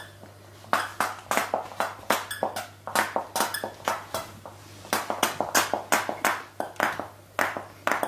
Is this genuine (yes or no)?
yes